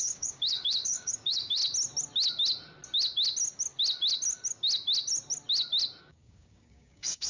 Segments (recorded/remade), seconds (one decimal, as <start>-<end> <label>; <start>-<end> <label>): 0.0-1.6 remade; 1.6-6.0 recorded; 6.0-7.3 remade

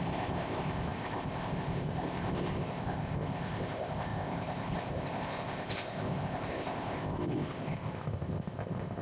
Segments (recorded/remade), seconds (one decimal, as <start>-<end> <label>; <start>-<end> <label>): 0.0-9.0 remade

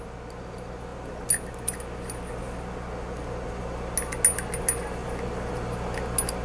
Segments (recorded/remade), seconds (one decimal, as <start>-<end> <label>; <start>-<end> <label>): 0.0-6.4 recorded